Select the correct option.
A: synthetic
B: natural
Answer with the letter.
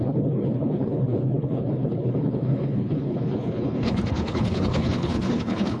A